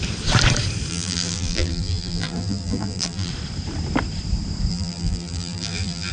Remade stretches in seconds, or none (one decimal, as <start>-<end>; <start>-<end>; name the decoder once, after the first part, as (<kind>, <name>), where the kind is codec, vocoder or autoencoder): 0.9-3.3 (vocoder, BigVGAN v2); 4.7-6.1